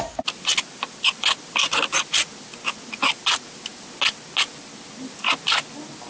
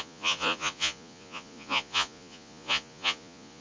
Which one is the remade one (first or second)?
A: second